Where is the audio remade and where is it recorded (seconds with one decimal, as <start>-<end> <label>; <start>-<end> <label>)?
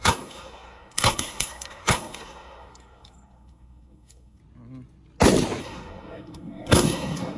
0.0-4.4 remade; 4.4-5.6 recorded; 5.6-7.4 remade